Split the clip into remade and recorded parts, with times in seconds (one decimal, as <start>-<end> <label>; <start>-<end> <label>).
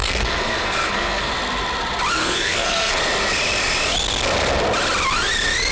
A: 0.0-1.3 remade; 1.3-2.2 recorded; 2.2-3.0 remade; 3.0-5.7 recorded